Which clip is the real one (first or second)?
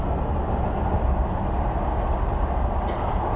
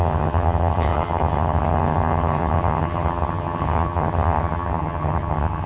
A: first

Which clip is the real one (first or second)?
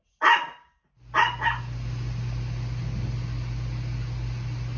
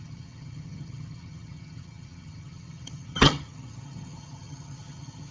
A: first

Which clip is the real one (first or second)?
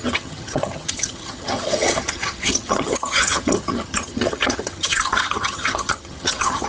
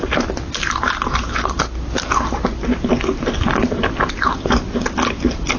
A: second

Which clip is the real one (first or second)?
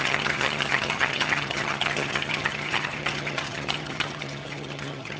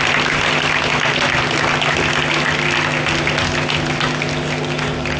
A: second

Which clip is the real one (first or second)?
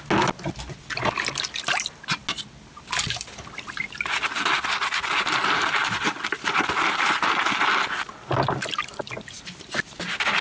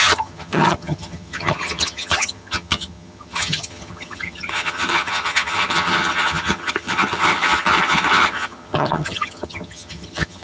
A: first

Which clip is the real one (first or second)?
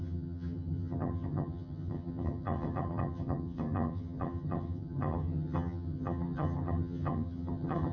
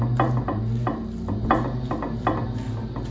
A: second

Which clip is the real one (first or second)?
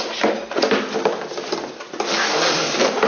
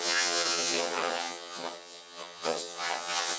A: first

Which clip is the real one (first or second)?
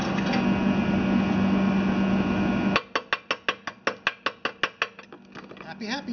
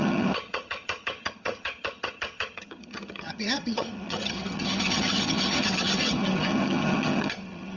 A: first